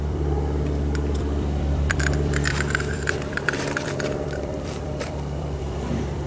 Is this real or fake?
fake